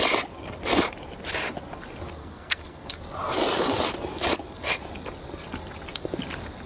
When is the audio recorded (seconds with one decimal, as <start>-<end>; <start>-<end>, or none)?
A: 0.0-2.2; 3.0-6.7